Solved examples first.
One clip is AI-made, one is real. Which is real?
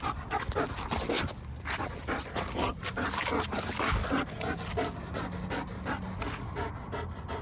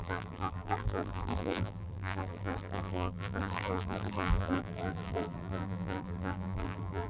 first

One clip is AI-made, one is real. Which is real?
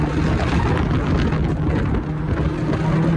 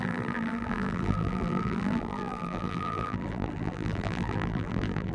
first